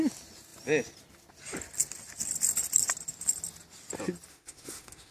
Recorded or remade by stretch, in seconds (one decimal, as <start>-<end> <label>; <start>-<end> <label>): 0.0-4.3 recorded; 4.3-5.1 remade